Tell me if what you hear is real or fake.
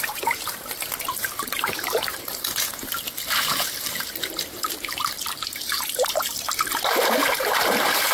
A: fake